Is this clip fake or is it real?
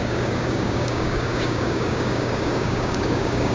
fake